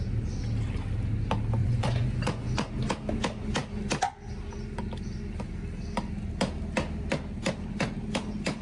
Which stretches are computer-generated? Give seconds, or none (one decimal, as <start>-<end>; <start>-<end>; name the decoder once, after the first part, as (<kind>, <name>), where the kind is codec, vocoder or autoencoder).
1.6-2.7 (vocoder, Vocos)